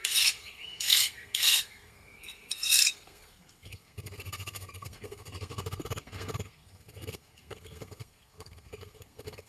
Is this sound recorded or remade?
remade